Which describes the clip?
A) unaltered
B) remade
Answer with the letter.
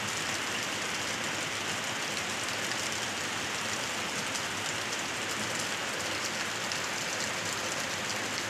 A